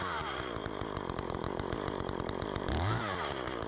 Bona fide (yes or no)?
no